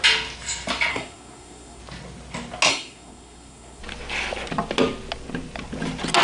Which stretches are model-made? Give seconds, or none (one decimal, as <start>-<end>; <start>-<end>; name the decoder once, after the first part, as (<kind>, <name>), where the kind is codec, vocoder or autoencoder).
0.9-1.8 (codec, SNAC); 2.7-3.8